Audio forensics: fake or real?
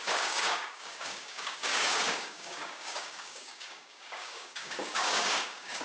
fake